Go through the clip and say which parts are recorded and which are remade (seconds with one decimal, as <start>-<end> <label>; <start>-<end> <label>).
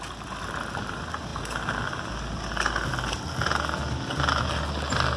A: 0.0-5.2 recorded